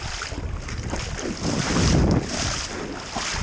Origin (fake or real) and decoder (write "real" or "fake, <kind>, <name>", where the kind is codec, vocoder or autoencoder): real